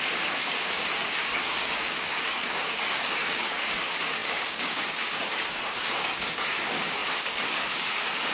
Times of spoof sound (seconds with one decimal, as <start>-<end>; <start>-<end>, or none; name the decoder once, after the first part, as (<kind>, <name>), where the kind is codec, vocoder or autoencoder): 0.0-8.3 (codec, DAC)